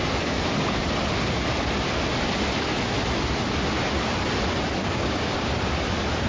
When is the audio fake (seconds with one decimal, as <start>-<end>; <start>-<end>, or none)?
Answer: 4.8-5.5